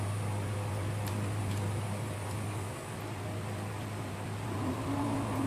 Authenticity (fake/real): real